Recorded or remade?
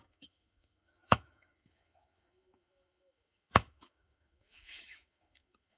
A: remade